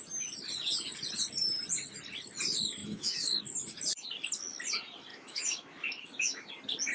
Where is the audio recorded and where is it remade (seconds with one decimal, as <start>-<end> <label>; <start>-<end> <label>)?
0.0-2.8 recorded; 2.8-3.4 remade; 3.4-5.1 recorded; 5.1-6.5 remade; 6.5-6.9 recorded